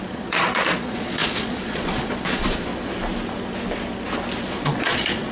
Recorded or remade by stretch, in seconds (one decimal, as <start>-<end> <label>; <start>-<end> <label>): 0.0-2.7 remade; 2.7-4.4 recorded; 4.4-5.3 remade